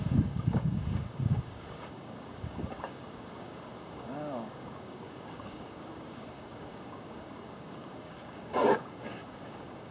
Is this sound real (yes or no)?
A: no